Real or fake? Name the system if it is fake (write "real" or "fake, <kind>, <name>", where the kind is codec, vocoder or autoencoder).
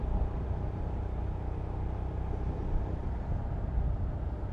real